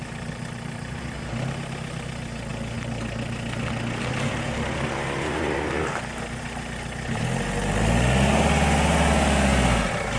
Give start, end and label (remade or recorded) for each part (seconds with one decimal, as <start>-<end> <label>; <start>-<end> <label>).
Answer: 0.0-10.2 recorded